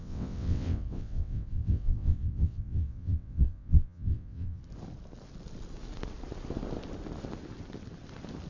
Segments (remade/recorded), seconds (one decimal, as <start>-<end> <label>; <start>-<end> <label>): 0.0-4.6 remade; 4.6-8.5 recorded